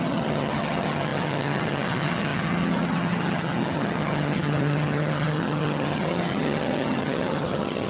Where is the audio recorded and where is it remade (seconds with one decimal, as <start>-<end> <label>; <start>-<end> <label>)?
0.0-7.9 remade